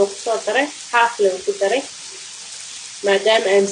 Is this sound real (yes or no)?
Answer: yes